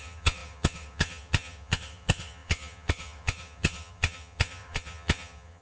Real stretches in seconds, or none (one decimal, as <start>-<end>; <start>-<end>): none